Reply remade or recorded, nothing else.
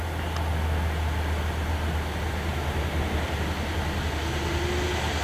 recorded